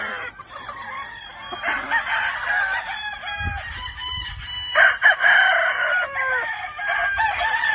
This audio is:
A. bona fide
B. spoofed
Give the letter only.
B